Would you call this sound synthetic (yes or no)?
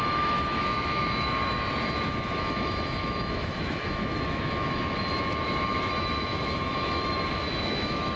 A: yes